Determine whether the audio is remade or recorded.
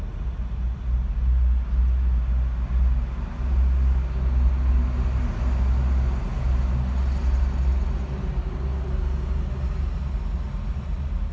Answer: recorded